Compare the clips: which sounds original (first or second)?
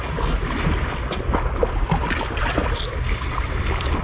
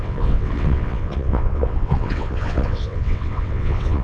first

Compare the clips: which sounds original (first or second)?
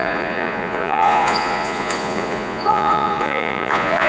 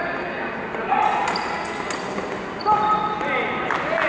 second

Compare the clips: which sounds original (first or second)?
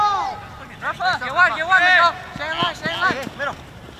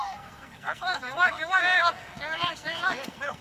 first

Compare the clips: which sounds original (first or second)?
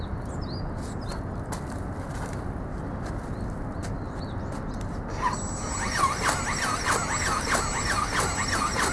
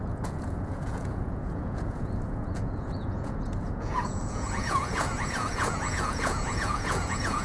first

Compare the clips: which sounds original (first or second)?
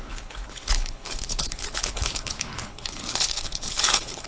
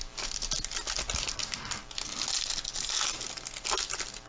second